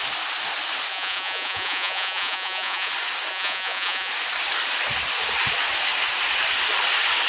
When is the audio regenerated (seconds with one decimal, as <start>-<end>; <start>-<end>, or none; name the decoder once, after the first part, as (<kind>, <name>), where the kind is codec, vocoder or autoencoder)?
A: 0.9-2.9 (vocoder, Vocos); 3.3-4.1